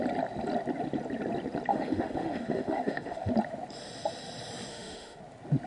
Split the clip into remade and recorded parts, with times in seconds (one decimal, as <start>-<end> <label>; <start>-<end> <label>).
0.0-1.7 recorded; 1.7-3.3 remade; 3.3-4.7 recorded; 4.7-5.2 remade; 5.2-5.7 recorded